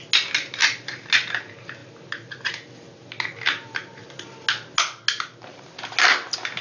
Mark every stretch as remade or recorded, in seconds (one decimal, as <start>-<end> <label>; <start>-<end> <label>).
0.0-6.6 recorded